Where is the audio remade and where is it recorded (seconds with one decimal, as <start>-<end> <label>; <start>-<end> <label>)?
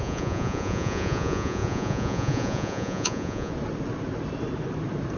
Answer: 0.0-3.5 remade; 3.5-5.2 recorded